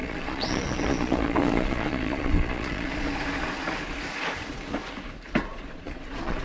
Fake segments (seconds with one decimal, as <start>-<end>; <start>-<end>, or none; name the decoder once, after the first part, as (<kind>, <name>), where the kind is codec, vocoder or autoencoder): 0.0-2.9 (vocoder, Vocos); 5.5-6.4